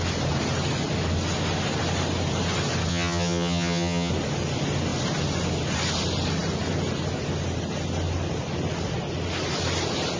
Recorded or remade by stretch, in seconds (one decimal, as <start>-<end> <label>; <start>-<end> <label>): 0.0-2.9 recorded; 2.9-4.1 remade; 4.1-10.2 recorded